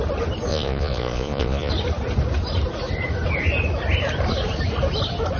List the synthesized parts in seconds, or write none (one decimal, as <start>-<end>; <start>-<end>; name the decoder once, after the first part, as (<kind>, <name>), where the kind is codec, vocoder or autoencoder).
0.5-1.7 (vocoder, Vocos)